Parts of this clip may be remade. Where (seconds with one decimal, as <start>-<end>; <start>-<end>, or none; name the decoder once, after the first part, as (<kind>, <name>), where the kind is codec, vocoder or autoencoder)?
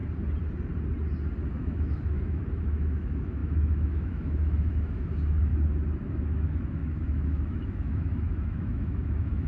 1.5-5.5 (autoencoder, DAC-VAE); 6.1-9.5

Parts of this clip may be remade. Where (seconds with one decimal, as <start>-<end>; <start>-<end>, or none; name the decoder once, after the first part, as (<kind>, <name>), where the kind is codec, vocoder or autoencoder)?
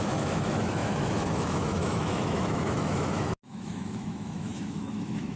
0.0-5.4 (autoencoder, DAC-VAE)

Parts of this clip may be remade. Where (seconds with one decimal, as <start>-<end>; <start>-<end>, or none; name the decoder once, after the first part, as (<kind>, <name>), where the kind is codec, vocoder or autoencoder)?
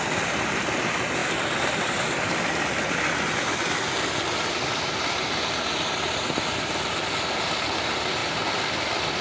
none